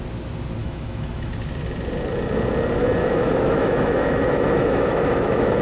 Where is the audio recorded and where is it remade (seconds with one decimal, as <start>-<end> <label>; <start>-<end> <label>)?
0.0-0.6 recorded; 0.6-1.3 remade; 1.3-3.0 recorded; 3.0-5.6 remade